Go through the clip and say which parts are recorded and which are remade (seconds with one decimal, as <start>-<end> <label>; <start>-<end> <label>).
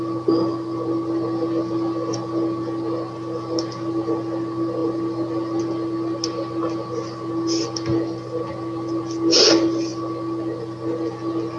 0.0-11.6 recorded